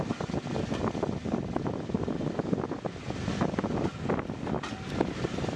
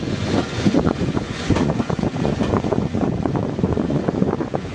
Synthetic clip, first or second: second